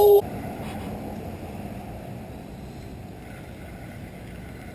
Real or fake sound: real